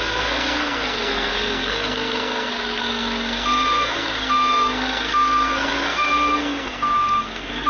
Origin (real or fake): fake